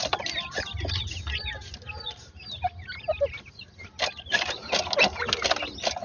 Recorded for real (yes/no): yes